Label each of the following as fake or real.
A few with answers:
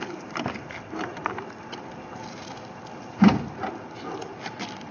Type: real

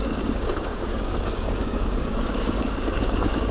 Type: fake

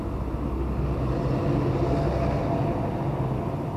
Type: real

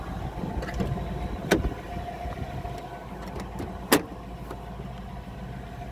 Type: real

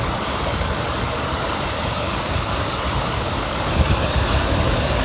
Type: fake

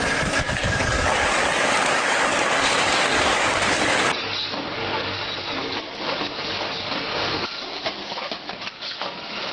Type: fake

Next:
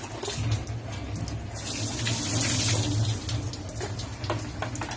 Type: real